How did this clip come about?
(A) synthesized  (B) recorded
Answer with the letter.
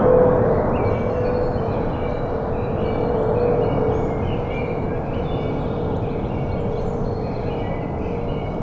B